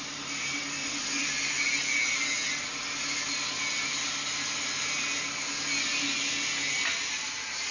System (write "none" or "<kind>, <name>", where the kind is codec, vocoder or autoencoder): none